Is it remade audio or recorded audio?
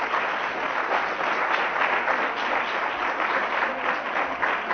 recorded